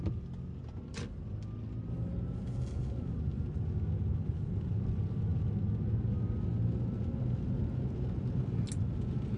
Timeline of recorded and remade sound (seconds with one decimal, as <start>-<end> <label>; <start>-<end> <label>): 0.0-9.4 recorded